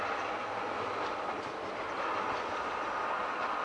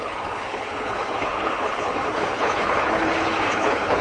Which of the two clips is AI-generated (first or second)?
second